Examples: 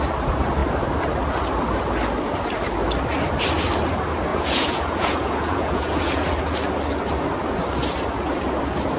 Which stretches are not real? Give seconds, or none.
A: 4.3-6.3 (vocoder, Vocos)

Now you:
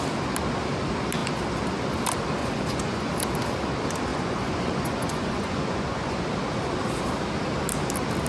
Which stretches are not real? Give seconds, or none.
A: 2.4-3.1 (vocoder, Vocos); 4.1-6.2

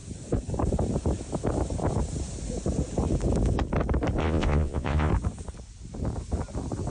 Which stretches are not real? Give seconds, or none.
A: 4.2-5.1 (vocoder, Vocos)

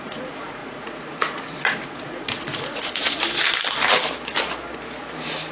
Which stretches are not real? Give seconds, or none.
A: 0.0-3.4 (vocoder, Vocos)

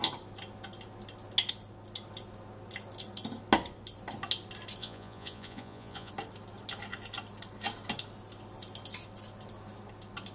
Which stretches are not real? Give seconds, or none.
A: 4.8-6.1 (vocoder, Vocos)